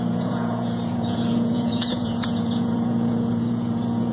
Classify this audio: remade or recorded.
remade